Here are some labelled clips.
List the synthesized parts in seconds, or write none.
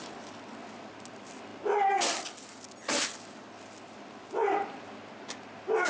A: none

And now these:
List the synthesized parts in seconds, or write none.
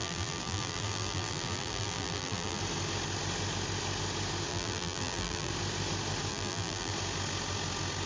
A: 0.0-2.6; 4.5-5.5; 6.3-6.9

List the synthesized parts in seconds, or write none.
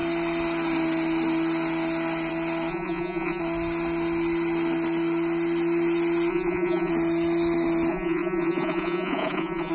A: 2.7-3.4; 6.3-6.9; 7.9-9.7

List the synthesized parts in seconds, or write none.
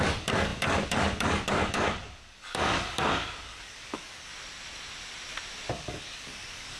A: 0.0-4.3; 5.7-6.8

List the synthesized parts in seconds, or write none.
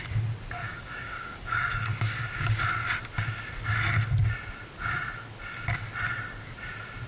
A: 0.6-2.6